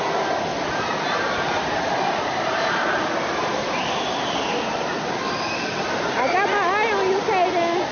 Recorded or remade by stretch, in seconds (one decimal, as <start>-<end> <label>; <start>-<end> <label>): 0.0-0.5 recorded; 0.5-4.0 remade; 4.0-7.9 recorded